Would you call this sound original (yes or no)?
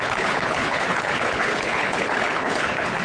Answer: no